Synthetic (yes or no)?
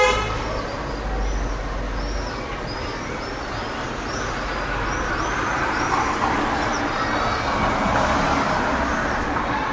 no